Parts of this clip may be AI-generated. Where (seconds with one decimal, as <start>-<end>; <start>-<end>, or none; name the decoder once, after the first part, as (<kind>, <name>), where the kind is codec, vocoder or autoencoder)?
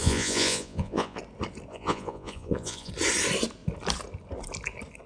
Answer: 0.0-1.2 (vocoder, Vocos); 1.7-2.9